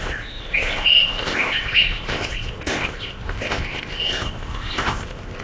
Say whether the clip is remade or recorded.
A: remade